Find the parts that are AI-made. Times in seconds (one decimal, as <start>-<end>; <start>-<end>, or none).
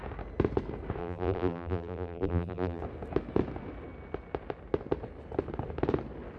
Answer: 1.0-2.8